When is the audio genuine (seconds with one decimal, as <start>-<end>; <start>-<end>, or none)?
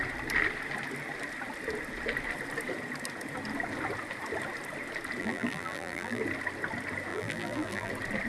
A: 0.0-5.2; 6.2-7.1; 7.9-8.3